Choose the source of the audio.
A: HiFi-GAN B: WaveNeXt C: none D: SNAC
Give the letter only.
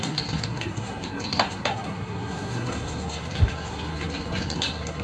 D